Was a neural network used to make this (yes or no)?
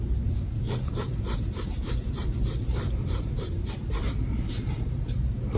yes